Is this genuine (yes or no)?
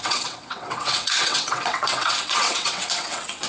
no